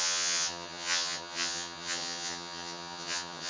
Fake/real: fake